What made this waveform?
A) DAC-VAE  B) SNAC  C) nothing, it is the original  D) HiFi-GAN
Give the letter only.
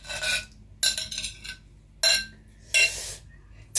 C